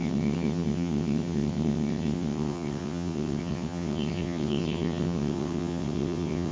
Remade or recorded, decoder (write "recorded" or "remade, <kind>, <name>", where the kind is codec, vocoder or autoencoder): remade, vocoder, WaveNeXt